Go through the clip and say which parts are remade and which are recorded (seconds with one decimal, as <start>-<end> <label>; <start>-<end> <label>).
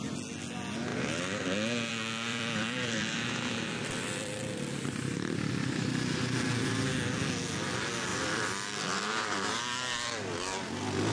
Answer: 0.0-2.3 recorded; 2.3-5.9 remade; 5.9-8.1 recorded; 8.1-9.6 remade; 9.6-11.1 recorded